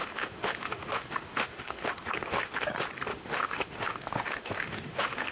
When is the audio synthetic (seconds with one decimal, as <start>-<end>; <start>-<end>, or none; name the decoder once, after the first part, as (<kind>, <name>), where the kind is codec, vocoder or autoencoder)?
0.0-2.7 (autoencoder, DAC-VAE); 3.1-5.3